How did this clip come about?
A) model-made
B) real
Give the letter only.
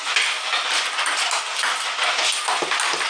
B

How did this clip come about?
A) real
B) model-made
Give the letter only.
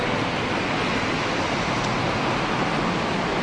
A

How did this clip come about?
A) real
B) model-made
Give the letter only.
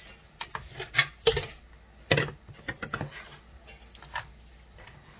A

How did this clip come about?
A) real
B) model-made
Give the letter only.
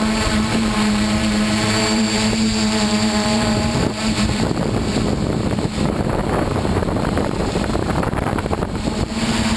B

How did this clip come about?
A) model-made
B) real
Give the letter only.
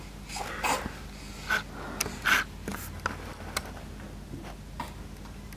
B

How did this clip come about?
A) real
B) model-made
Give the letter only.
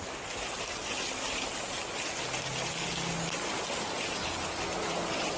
A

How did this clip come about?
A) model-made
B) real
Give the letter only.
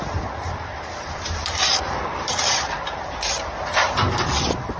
A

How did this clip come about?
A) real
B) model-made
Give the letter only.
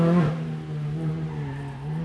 A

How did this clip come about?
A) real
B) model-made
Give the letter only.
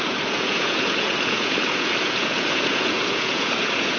B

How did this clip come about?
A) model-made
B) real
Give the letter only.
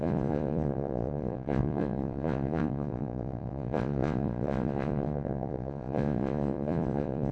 A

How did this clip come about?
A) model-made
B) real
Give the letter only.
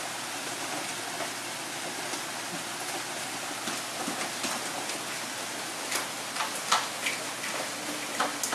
B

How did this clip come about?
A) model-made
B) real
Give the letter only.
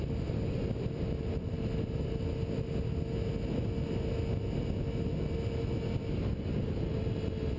B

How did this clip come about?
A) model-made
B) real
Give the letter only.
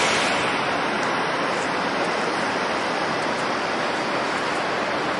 B